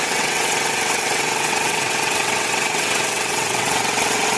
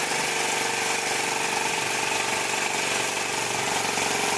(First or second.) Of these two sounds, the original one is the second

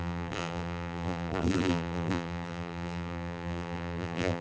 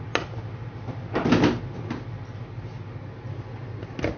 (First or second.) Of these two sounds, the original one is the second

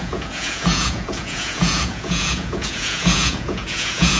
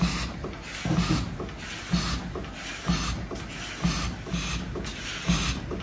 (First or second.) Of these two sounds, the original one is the second